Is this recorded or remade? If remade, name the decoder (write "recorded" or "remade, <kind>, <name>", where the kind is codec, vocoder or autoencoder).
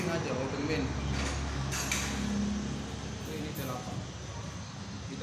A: recorded